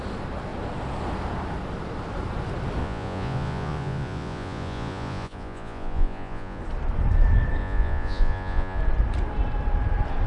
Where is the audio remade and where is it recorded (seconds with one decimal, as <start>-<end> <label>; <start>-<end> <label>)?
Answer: 0.0-2.8 recorded; 2.8-6.6 remade; 6.6-7.6 recorded; 7.6-8.8 remade; 8.8-10.3 recorded